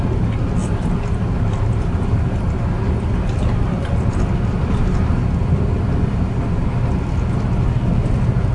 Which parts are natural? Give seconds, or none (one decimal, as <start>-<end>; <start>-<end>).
0.0-0.6; 2.4-8.5